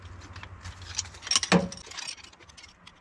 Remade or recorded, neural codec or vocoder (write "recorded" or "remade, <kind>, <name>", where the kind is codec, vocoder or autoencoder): recorded